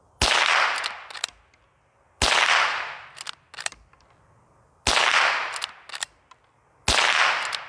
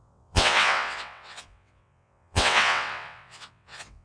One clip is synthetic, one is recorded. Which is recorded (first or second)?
first